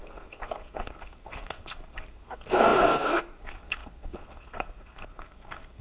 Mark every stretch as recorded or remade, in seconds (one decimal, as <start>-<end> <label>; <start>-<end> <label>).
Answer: 0.0-5.8 remade